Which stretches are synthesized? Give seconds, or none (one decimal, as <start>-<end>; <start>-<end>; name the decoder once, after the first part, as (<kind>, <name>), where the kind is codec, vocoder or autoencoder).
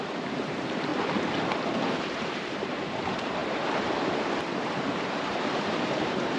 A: 0.0-0.9 (vocoder, BigVGAN v2); 2.0-6.4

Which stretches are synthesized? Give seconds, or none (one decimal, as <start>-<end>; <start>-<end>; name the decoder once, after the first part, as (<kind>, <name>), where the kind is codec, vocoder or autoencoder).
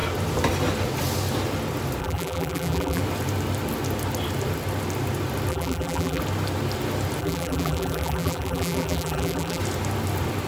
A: 2.0-3.0 (vocoder, BigVGAN v2); 5.5-6.2; 7.2-9.6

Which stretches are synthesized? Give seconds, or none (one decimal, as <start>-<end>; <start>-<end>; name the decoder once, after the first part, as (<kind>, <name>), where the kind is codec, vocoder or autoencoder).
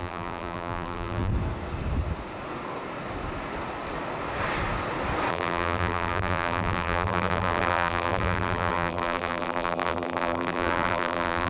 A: 0.0-1.3 (vocoder, BigVGAN v2); 5.3-11.5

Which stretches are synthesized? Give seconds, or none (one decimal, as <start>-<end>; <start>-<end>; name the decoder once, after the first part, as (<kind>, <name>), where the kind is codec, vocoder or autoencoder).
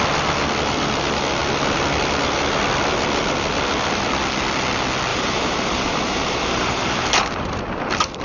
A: 5.1-7.6 (vocoder, BigVGAN v2)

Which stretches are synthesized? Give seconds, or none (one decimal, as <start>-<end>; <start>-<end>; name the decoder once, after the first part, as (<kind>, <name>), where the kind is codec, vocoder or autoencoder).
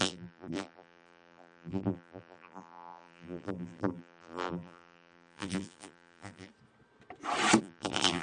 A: 0.0-6.5 (vocoder, BigVGAN v2); 7.6-8.2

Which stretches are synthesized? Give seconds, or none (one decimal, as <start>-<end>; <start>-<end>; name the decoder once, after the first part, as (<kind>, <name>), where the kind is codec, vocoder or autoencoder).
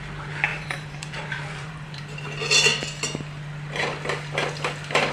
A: 0.5-2.0 (vocoder, BigVGAN v2)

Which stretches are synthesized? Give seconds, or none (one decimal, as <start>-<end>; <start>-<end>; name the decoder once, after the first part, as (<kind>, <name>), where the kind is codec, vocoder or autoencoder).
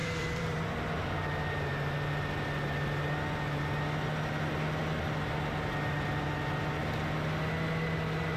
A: 0.0-0.7 (vocoder, BigVGAN v2)